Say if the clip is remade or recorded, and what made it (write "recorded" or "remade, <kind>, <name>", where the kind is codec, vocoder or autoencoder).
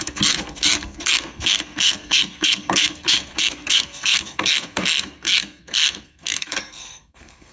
remade, codec, SNAC